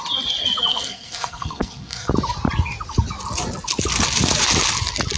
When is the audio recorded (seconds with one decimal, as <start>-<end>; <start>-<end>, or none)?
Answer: 0.0-0.7; 2.1-5.2